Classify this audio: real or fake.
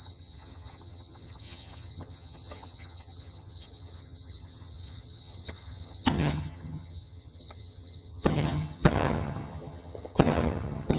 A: fake